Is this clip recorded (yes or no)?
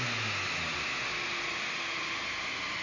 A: yes